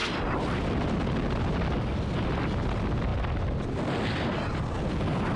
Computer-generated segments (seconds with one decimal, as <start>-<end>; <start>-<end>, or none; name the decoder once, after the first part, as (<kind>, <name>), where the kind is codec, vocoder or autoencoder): none

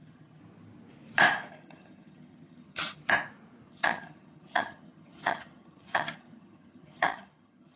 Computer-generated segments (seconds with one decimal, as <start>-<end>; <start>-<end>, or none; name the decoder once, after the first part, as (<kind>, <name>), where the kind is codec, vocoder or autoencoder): 0.0-0.4 (vocoder, HiFi-GAN); 1.5-3.0; 3.7-7.8

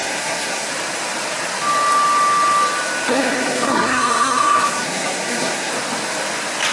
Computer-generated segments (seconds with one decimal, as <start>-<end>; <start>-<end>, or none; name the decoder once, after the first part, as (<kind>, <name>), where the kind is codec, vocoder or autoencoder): 0.0-0.7 (codec, SNAC); 3.1-5.7